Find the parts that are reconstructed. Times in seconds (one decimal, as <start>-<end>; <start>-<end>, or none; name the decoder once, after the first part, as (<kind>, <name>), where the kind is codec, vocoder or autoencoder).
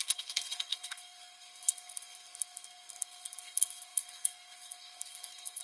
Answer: 0.0-5.6 (codec, SNAC)